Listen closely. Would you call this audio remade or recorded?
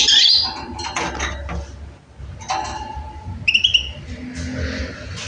recorded